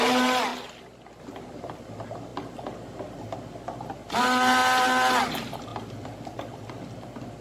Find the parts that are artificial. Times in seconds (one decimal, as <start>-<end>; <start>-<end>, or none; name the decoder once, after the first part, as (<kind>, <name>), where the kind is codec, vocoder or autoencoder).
5.7-6.7 (vocoder, BigVGAN v2)